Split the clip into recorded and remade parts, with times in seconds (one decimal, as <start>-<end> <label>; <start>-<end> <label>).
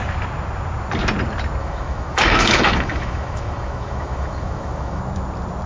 0.0-1.6 recorded; 1.6-5.0 remade; 5.0-5.7 recorded